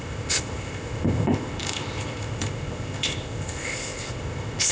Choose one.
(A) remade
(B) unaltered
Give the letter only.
A